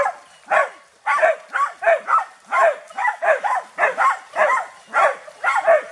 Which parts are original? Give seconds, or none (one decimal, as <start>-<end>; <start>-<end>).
0.0-3.0; 3.6-5.9